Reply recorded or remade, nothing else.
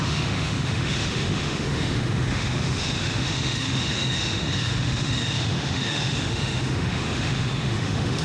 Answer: remade